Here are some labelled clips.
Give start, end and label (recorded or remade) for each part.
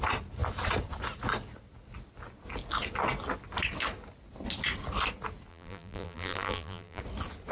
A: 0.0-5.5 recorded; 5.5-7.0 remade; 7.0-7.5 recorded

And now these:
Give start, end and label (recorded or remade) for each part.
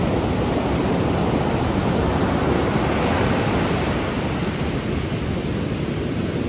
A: 0.0-1.8 remade; 1.8-2.6 recorded; 2.6-6.5 remade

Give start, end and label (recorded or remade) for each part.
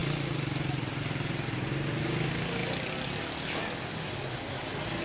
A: 0.0-1.0 remade; 1.0-5.0 recorded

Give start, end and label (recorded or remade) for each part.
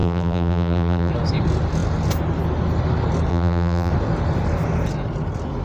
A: 0.0-1.1 remade; 1.1-3.3 recorded; 3.3-3.9 remade; 3.9-5.6 recorded